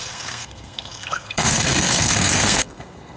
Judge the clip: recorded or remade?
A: remade